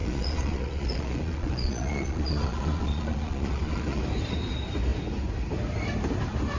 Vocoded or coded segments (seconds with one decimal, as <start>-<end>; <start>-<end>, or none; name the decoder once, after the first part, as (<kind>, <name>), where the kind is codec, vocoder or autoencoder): 0.0-4.0 (vocoder, Vocos)

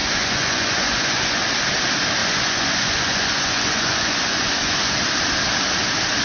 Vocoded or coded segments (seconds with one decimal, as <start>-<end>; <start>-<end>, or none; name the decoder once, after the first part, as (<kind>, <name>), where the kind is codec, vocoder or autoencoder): 0.0-1.4 (vocoder, Vocos); 2.2-5.0

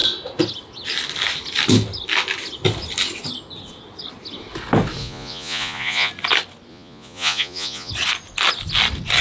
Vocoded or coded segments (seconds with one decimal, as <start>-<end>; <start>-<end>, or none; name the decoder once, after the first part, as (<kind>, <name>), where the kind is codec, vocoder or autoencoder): 5.0-6.1 (vocoder, Vocos); 6.7-7.9

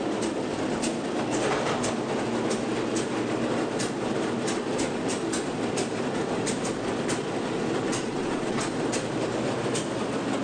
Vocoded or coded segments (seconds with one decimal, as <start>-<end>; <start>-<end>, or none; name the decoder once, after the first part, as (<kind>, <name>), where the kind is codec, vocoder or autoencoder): 7.9-8.7 (vocoder, Vocos)

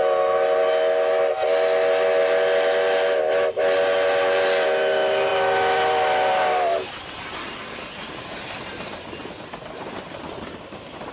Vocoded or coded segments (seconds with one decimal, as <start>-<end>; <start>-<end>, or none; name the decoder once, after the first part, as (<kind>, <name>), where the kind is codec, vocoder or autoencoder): none

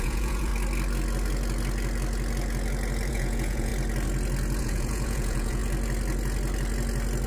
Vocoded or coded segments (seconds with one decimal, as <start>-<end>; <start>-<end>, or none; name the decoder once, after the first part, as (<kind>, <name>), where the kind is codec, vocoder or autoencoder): 0.0-0.5 (vocoder, Vocos); 3.1-3.7; 4.6-5.6

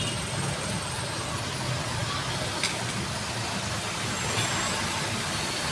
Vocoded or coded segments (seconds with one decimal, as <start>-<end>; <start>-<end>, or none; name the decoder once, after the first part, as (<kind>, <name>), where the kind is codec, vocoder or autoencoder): none

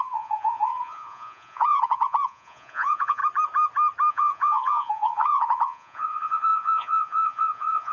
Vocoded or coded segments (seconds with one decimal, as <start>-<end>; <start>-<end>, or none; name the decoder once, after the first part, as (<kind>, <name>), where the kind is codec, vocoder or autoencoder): 0.0-3.2 (vocoder, Vocos); 4.1-7.9